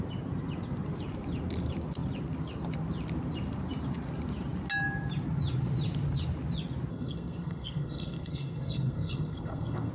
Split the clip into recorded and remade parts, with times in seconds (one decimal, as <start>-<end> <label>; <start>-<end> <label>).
0.0-6.9 recorded; 6.9-9.9 remade